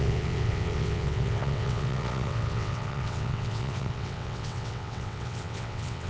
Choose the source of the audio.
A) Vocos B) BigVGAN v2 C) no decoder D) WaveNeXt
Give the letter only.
D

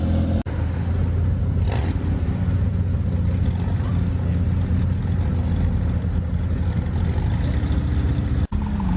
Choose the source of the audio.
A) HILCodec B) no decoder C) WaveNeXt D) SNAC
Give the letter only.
B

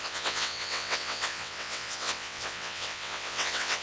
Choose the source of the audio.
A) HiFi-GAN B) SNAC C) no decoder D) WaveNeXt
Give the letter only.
D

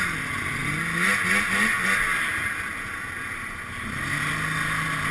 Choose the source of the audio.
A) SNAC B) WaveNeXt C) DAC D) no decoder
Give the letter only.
D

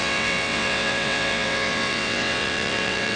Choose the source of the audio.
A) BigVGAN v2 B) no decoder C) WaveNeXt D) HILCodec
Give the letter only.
C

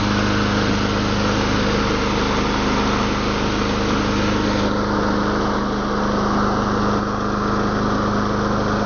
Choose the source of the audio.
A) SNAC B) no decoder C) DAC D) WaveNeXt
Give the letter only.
B